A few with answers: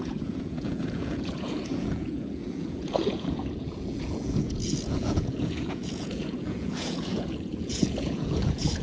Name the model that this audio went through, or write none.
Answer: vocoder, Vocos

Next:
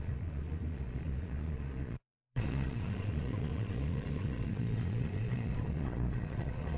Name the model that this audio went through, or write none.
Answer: vocoder, Vocos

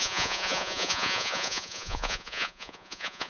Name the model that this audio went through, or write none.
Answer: vocoder, Vocos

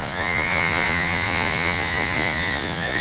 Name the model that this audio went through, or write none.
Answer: vocoder, Vocos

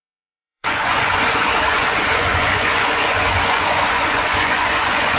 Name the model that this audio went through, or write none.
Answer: vocoder, Vocos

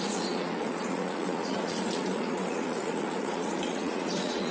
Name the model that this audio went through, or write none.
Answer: vocoder, Vocos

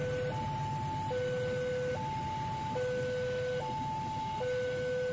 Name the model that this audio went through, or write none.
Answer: none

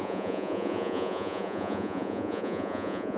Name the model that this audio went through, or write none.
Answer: vocoder, Vocos